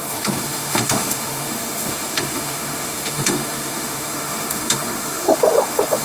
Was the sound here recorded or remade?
remade